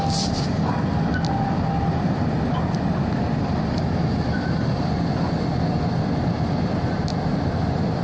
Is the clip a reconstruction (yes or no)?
no